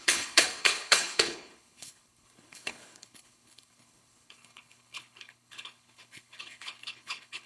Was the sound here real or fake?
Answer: fake